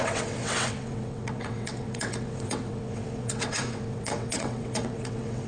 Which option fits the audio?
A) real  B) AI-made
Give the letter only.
B